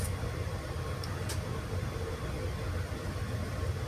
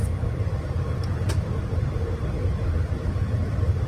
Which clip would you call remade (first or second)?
second